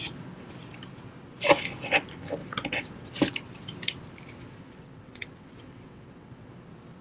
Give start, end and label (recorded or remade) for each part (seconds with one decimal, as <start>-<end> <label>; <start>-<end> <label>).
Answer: 0.0-2.4 recorded; 2.4-3.1 remade; 3.1-4.4 recorded; 4.4-6.5 remade; 6.5-7.0 recorded